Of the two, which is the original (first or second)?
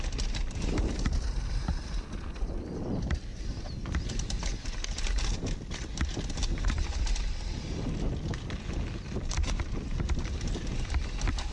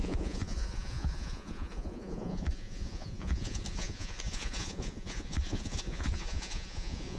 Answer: first